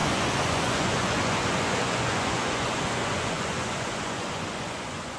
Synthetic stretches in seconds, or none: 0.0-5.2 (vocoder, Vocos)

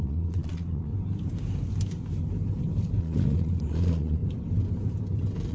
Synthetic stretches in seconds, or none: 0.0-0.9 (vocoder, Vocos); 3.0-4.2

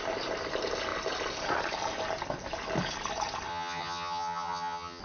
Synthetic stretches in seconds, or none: 3.5-5.0 (vocoder, HiFi-GAN)